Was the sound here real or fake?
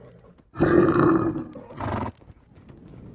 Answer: real